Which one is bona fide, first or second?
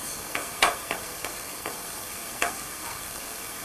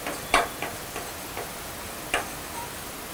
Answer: second